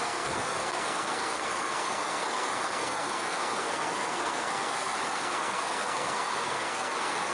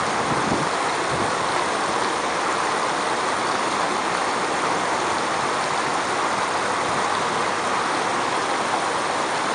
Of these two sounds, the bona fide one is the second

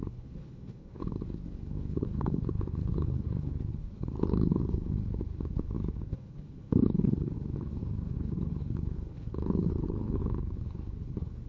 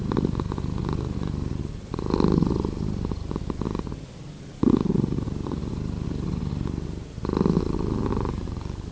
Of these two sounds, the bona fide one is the second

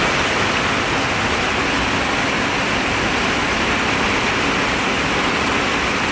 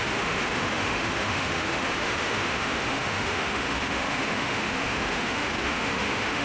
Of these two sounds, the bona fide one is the first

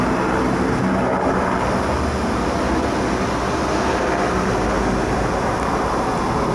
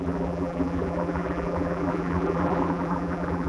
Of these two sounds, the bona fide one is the first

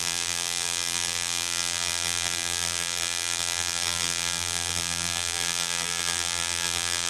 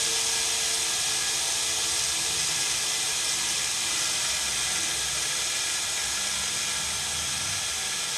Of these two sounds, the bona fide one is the second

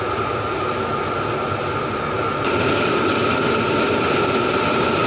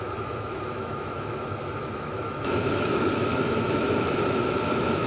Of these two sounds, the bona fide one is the first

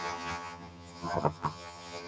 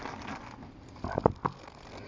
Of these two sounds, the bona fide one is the second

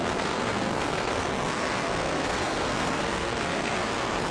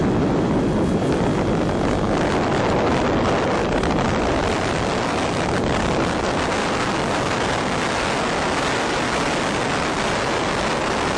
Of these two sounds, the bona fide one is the second